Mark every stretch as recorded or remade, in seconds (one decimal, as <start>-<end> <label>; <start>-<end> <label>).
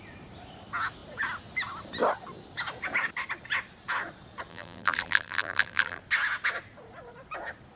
0.0-4.5 recorded; 4.5-6.0 remade; 6.0-7.8 recorded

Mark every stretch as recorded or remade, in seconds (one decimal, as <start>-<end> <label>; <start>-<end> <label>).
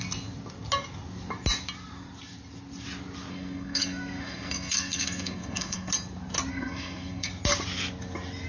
0.0-3.3 recorded; 3.3-5.9 remade; 5.9-6.5 recorded; 6.5-7.3 remade; 7.3-8.5 recorded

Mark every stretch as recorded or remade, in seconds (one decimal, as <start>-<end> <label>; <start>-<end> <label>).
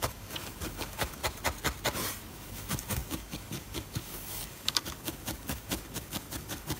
0.0-1.2 remade; 1.2-2.3 recorded; 2.3-6.8 remade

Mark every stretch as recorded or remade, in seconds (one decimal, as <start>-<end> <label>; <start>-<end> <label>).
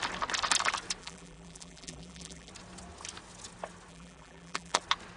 0.0-1.0 recorded; 1.0-2.5 remade; 2.5-3.9 recorded; 3.9-4.8 remade; 4.8-5.2 recorded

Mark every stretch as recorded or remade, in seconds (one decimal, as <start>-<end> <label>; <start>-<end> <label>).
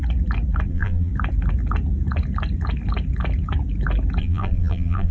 0.0-0.7 recorded; 0.7-1.1 remade; 1.1-4.2 recorded; 4.2-5.1 remade